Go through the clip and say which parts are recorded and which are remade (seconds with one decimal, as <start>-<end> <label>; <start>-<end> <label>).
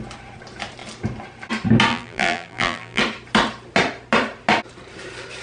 0.0-1.9 recorded; 1.9-3.0 remade; 3.0-5.4 recorded